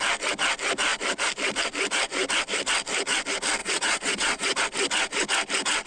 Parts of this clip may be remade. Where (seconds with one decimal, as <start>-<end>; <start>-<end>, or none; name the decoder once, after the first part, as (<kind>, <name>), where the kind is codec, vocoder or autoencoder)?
3.6-4.6 (vocoder, Vocos)